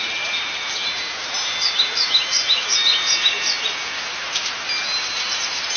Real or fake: real